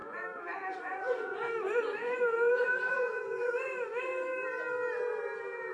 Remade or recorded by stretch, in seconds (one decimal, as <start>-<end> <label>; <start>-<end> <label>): 0.0-4.1 remade; 4.1-5.7 recorded